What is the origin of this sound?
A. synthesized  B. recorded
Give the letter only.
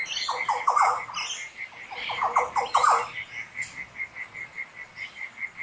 B